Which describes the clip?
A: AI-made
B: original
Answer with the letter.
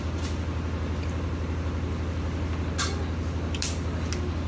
B